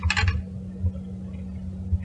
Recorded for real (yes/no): yes